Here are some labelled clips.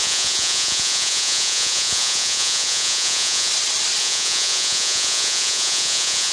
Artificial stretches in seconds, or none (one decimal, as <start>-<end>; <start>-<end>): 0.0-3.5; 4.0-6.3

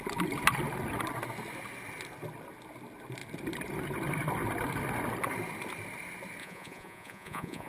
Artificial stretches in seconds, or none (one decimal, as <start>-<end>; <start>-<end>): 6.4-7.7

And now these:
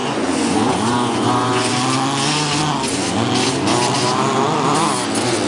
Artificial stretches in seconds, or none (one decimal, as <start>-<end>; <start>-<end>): 0.0-1.7